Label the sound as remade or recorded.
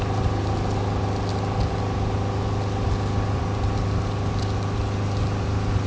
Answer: recorded